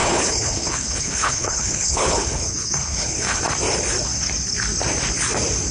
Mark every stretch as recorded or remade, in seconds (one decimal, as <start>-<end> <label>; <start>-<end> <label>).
0.0-3.4 remade; 3.4-5.7 recorded